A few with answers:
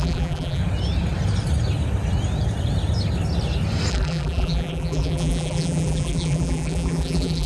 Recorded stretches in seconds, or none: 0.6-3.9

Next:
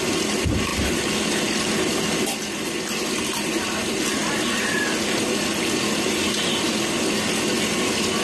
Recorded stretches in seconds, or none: 0.0-0.7; 2.0-4.2; 5.4-8.2

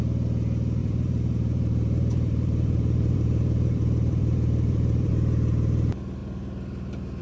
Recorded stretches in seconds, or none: 0.0-0.8; 5.1-7.2

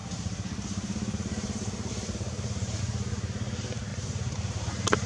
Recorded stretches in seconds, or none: 2.8-3.9

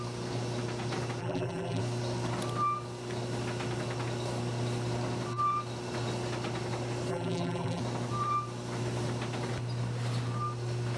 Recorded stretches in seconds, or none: 0.0-1.2; 1.8-7.1; 7.8-11.0

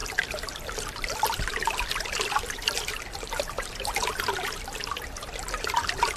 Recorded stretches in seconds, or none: 3.7-6.2